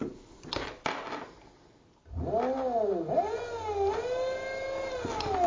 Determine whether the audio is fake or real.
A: real